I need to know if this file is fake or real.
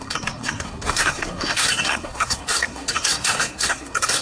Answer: fake